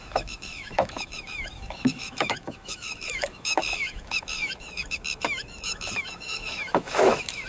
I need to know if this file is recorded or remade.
remade